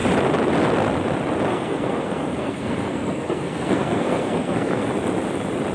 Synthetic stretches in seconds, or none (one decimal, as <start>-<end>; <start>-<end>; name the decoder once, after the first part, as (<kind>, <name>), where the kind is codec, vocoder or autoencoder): 1.5-4.9 (codec, SNAC)